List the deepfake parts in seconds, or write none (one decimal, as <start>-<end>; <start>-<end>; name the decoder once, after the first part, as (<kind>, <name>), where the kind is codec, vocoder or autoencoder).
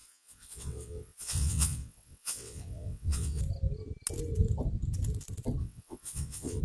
0.0-3.4 (vocoder, WaveNeXt); 5.6-6.6